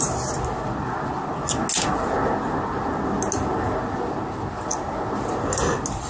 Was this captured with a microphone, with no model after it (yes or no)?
yes